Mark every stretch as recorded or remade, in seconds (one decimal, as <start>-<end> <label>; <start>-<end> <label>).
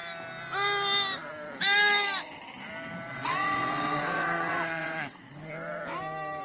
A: 0.0-3.1 recorded; 3.1-5.2 remade; 5.2-6.4 recorded